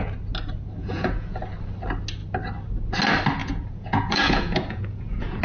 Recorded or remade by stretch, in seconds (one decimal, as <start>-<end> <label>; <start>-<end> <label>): 0.0-0.8 recorded; 0.8-1.4 remade; 1.4-3.4 recorded; 3.4-5.4 remade